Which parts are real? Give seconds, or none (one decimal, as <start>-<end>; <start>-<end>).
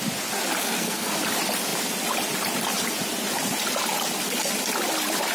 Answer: 0.0-0.6; 1.2-5.3